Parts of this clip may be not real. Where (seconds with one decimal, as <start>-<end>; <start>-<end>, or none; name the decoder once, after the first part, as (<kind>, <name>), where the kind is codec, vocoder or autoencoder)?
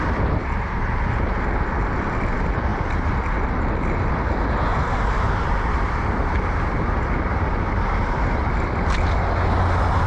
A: 0.4-1.0 (vocoder, BigVGAN v2); 4.7-8.4